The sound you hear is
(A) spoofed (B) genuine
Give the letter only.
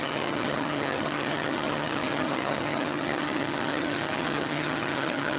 A